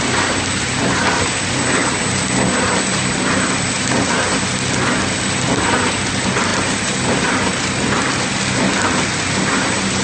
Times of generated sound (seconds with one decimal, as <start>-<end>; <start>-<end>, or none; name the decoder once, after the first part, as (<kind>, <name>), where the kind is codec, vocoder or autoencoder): none